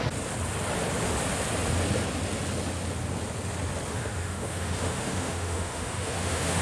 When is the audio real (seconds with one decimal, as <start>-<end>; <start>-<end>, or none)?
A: 0.0-3.9

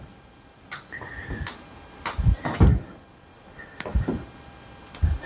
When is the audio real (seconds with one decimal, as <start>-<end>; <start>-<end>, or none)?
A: 0.0-5.3

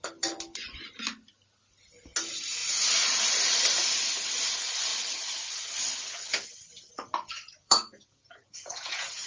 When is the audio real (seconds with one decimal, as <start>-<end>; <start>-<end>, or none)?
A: 0.0-7.6

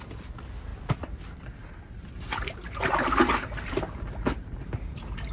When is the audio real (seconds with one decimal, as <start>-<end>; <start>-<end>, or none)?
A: 0.0-5.3

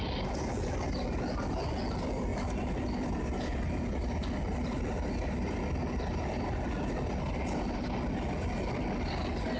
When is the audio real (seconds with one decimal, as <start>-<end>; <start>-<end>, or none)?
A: 0.0-9.6

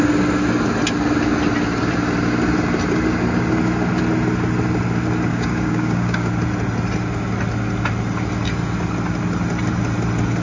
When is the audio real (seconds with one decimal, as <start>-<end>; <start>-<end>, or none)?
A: 0.0-5.3; 6.3-10.4

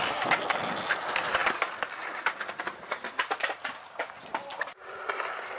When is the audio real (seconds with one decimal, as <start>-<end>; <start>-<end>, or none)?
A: 0.0-5.6